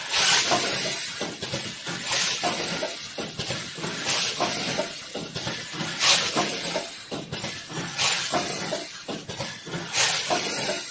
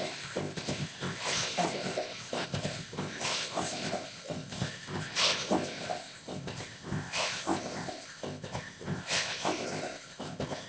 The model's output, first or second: second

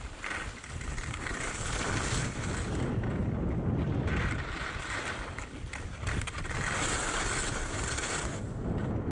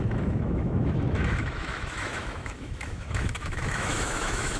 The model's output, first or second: second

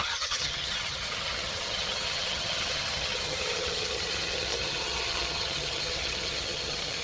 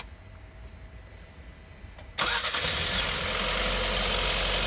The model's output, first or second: first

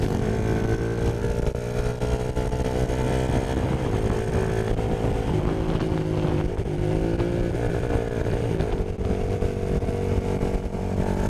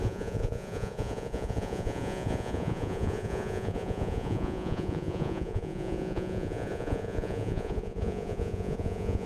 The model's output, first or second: second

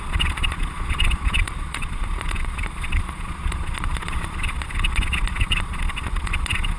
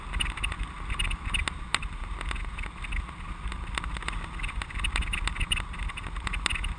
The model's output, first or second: first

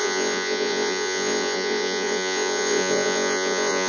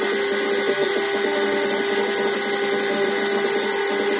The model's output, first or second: first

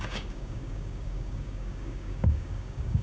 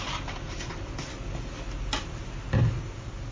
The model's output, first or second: first